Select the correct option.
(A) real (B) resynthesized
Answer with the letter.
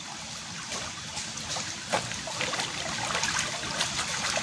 A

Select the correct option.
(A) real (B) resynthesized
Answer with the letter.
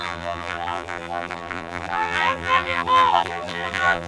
B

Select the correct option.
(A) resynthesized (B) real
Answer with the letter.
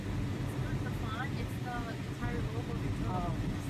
B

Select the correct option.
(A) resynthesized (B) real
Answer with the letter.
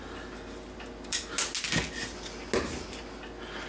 B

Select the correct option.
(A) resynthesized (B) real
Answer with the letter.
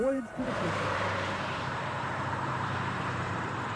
A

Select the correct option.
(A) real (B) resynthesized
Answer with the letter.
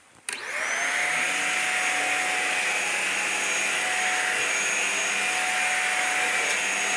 A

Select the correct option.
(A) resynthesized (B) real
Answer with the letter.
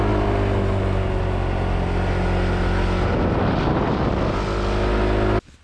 B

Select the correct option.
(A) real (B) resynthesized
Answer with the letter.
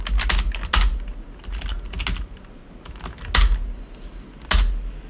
A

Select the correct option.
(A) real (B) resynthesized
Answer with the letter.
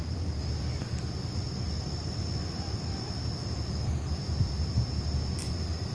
A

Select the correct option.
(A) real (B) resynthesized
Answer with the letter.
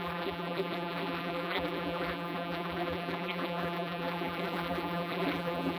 B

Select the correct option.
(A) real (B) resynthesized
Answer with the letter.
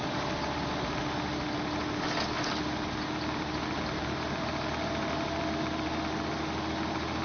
A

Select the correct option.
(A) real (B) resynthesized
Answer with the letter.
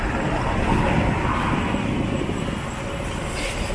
A